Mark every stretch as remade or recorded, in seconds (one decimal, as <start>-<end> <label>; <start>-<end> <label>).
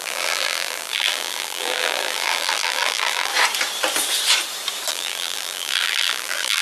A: 0.0-3.3 remade; 3.3-4.9 recorded; 4.9-6.6 remade